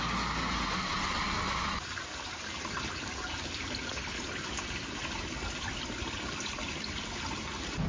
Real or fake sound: real